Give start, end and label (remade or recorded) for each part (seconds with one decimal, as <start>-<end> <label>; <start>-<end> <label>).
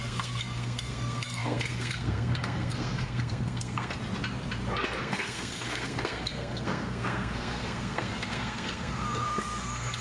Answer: 0.0-4.0 remade; 4.0-5.0 recorded; 5.0-10.0 remade